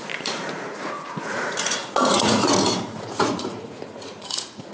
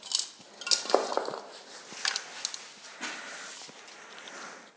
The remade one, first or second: first